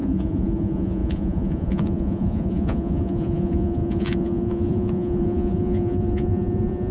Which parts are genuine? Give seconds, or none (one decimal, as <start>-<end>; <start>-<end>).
none